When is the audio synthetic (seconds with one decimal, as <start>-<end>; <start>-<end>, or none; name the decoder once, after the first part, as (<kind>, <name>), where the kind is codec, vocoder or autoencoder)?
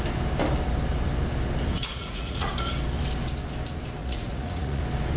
1.7-2.5 (vocoder, Vocos); 4.0-4.8